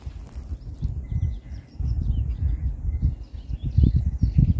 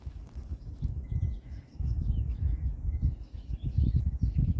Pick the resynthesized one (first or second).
second